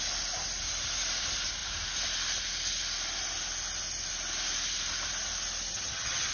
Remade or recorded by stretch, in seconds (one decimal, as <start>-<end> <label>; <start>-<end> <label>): 0.0-5.7 recorded; 5.7-6.3 remade